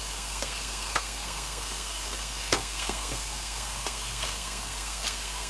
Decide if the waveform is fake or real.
fake